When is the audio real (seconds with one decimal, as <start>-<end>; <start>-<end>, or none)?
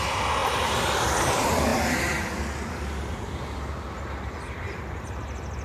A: 1.7-4.5